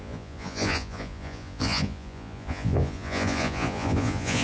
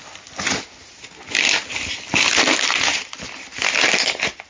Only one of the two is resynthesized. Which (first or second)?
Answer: first